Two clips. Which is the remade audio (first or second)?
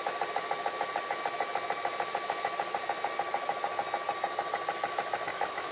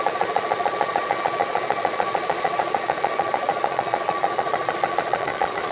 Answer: second